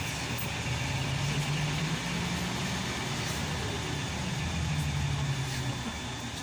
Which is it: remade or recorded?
recorded